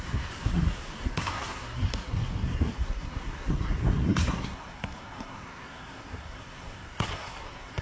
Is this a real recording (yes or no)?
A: no